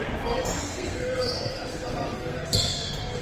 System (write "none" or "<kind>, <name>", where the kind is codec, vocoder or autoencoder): codec, SNAC